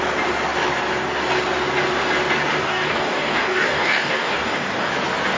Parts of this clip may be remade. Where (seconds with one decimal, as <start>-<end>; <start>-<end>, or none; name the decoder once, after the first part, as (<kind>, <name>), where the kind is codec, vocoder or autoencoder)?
2.6-4.9 (codec, DAC)